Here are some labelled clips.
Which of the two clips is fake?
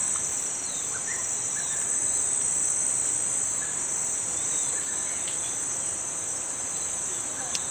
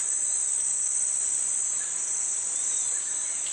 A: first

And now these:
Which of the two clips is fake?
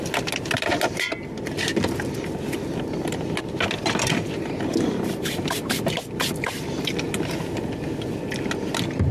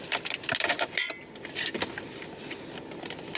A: first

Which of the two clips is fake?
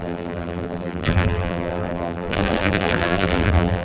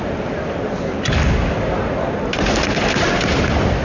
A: first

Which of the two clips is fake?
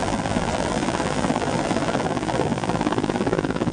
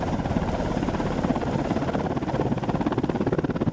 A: first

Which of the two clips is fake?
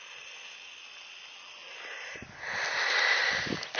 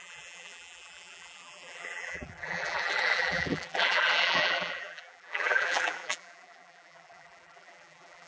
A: second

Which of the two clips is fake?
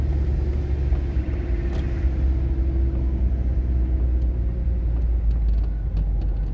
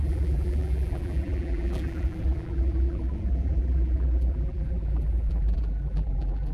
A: second